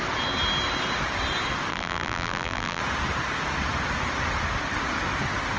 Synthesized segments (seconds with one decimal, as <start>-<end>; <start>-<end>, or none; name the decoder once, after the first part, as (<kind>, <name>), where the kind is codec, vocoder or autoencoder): 1.7-2.8 (vocoder, BigVGAN v2)